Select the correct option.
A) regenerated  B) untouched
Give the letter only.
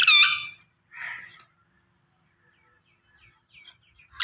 B